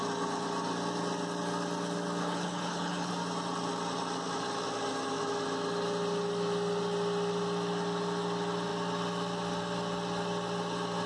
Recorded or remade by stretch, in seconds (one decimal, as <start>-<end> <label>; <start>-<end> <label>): 0.0-2.2 recorded; 2.2-3.1 remade; 3.1-11.1 recorded